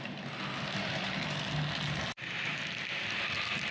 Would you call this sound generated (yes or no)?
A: no